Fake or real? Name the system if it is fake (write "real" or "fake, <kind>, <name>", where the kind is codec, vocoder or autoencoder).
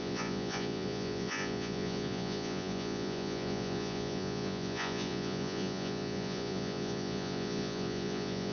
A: fake, vocoder, Vocos